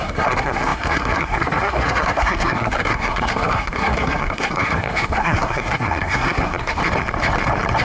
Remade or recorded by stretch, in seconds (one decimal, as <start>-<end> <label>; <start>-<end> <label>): 0.0-6.8 remade; 6.8-7.8 recorded